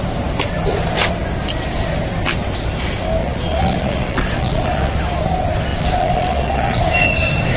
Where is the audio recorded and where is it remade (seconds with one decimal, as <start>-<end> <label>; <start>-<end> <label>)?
0.0-3.2 recorded; 3.2-4.9 remade; 4.9-5.7 recorded; 5.7-6.8 remade; 6.8-7.6 recorded